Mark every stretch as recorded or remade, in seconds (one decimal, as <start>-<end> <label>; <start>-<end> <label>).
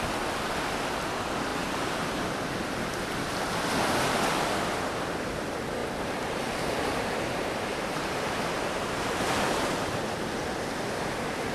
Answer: 0.0-1.5 recorded; 1.5-2.2 remade; 2.2-5.8 recorded; 5.8-10.0 remade; 10.0-11.5 recorded